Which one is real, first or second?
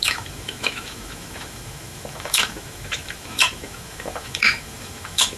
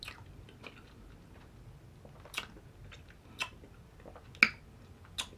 second